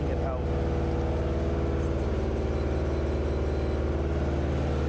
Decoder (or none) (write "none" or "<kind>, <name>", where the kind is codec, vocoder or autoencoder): none